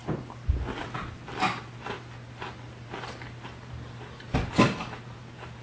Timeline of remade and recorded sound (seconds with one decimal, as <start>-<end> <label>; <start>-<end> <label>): 0.0-5.6 recorded